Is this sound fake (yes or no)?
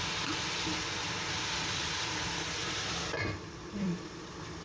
yes